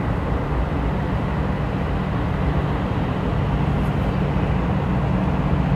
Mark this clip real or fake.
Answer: real